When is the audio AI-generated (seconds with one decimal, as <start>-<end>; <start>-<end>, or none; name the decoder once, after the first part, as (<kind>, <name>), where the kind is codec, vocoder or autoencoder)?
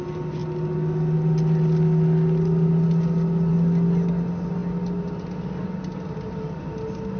none